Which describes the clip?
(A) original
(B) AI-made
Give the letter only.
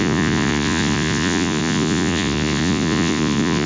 B